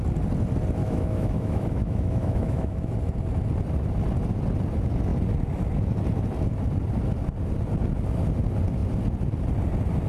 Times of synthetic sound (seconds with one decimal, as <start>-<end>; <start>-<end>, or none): 0.8-2.9